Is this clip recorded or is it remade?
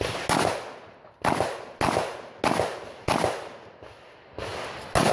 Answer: recorded